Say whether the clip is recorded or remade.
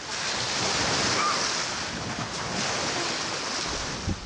recorded